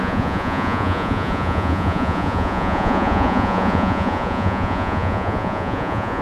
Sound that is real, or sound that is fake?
fake